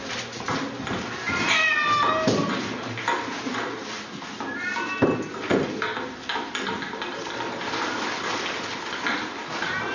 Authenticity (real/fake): real